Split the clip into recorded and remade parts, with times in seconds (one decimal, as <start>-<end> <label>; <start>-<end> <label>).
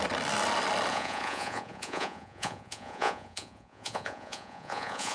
0.0-0.9 recorded; 0.9-5.1 remade